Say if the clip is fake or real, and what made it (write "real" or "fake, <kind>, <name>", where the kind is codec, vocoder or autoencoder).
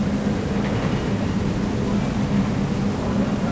real